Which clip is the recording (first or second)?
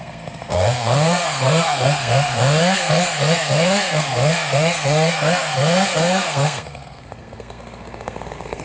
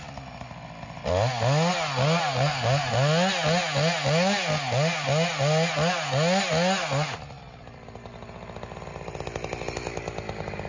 second